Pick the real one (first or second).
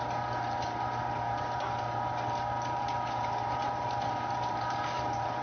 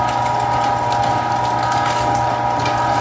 second